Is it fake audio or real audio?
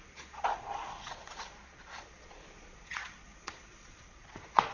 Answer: fake